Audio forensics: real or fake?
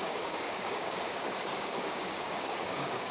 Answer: fake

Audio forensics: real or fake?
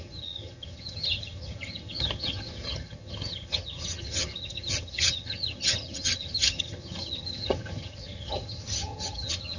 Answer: fake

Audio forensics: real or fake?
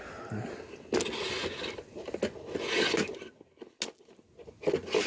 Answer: real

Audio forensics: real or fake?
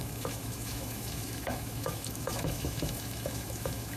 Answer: fake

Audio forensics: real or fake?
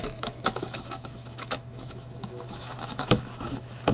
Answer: fake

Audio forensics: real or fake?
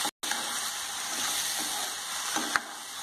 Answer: real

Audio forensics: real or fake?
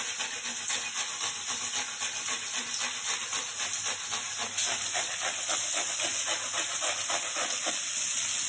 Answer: real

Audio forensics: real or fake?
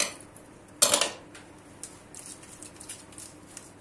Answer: real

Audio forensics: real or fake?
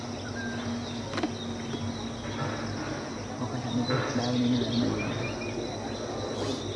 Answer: real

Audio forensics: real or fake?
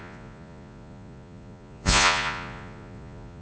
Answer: fake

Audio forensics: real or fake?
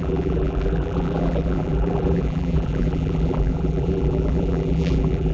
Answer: fake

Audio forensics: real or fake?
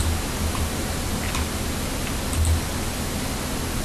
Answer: real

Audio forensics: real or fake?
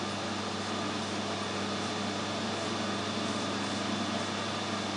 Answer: real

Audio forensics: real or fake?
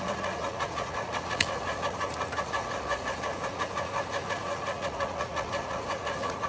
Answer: fake